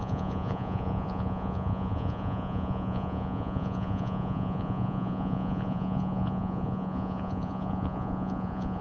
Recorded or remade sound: remade